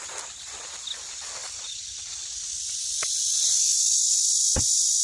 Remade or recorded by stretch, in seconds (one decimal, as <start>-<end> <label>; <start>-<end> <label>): 0.0-5.0 recorded